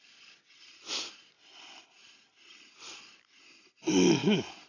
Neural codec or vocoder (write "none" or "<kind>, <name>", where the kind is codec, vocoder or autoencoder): none